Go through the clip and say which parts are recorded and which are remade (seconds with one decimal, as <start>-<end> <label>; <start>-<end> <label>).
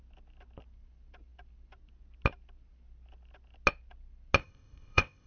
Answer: 0.0-4.4 recorded; 4.4-5.3 remade